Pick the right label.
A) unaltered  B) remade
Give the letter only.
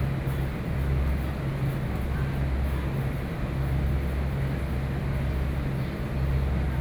A